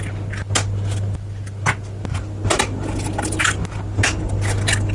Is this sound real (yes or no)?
yes